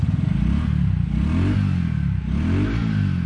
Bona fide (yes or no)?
yes